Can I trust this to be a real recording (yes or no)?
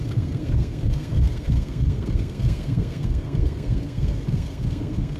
no